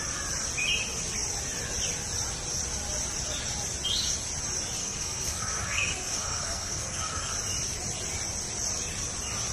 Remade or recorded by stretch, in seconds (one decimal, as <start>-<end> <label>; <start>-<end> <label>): 0.0-4.8 recorded; 4.8-7.3 remade; 7.3-9.5 recorded